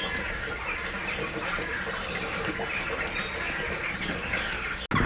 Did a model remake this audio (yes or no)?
no